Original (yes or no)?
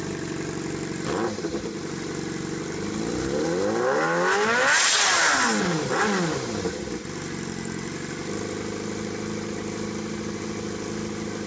yes